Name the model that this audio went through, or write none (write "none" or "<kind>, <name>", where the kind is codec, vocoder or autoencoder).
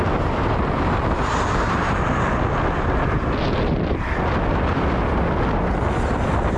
none